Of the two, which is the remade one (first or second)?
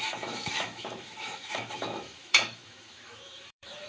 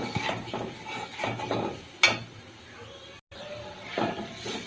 first